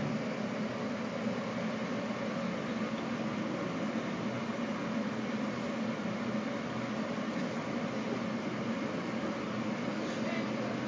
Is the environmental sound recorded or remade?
recorded